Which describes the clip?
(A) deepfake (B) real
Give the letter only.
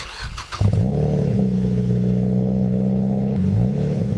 A